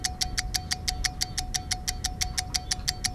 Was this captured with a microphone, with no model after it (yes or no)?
yes